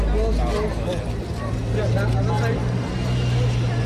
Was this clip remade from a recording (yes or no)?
no